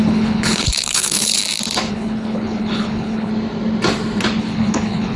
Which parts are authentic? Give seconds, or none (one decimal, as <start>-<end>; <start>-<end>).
1.4-1.9; 3.3-4.4